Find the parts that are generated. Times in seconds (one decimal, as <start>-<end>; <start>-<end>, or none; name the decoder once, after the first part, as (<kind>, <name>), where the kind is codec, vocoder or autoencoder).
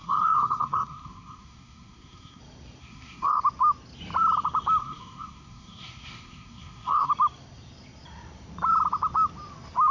0.0-2.4 (codec, SNAC); 2.8-3.4; 4.8-7.1